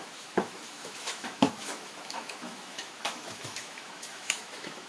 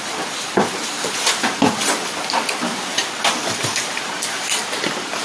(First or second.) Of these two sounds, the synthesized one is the first